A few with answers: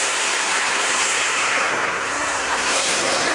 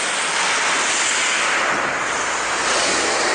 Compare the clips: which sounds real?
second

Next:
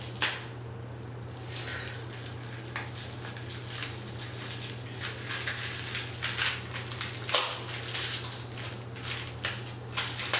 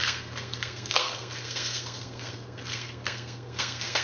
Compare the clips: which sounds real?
first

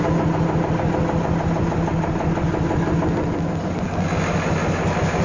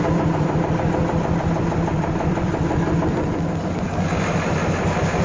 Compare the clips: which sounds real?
first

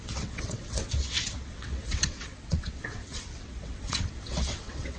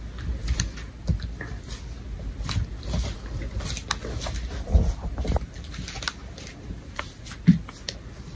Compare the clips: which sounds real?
second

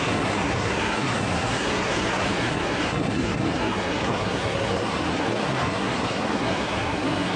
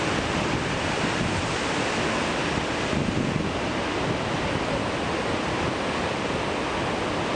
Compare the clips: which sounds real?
second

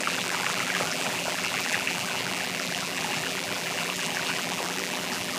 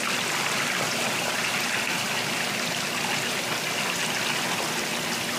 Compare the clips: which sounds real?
second